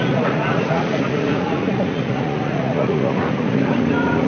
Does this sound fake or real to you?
fake